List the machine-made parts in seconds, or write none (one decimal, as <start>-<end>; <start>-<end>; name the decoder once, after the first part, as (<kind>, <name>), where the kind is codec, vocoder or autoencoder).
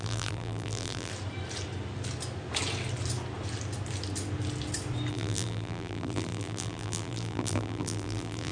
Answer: 0.0-1.1 (vocoder, BigVGAN v2); 5.1-8.5